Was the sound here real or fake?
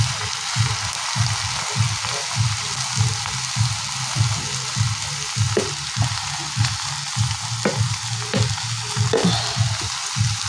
real